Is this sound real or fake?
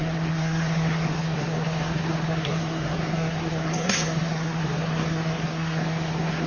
fake